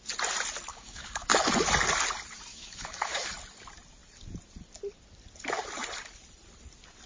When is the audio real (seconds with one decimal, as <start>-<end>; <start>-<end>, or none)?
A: 0.0-0.7; 1.3-2.5; 3.3-7.1